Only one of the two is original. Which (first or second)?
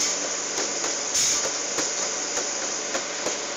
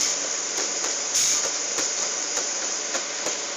first